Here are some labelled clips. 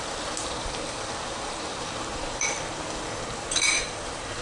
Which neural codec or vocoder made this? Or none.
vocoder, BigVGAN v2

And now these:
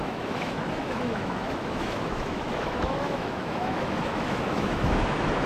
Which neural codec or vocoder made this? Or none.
autoencoder, DAC-VAE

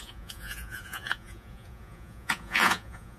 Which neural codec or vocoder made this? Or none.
vocoder, Vocos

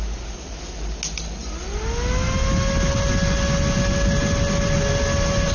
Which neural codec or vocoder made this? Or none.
none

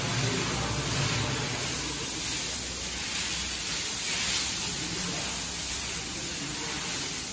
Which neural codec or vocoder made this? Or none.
none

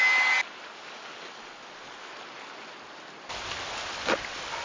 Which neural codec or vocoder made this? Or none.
none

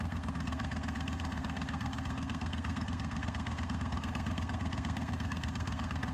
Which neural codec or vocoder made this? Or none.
codec, SNAC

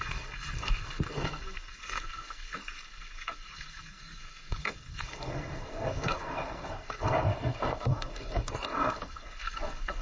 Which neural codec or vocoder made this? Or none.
codec, SNAC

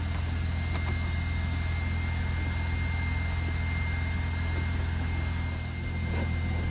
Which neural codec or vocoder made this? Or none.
none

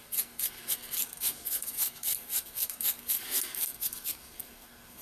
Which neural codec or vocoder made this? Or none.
codec, SNAC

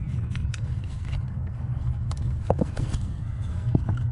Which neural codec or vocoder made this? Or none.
codec, SNAC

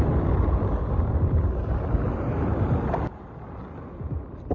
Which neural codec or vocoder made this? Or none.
none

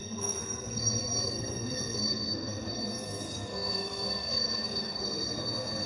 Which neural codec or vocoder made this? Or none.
codec, SNAC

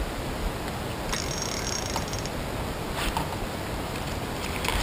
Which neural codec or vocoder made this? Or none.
none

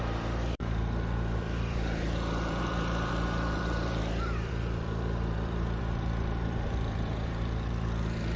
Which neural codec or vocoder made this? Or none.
vocoder, BigVGAN v2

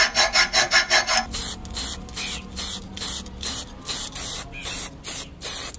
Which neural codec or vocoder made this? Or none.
none